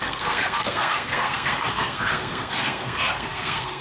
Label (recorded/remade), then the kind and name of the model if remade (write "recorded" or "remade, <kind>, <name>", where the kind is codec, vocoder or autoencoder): remade, codec, SNAC